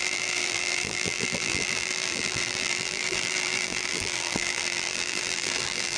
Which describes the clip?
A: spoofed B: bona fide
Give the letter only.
A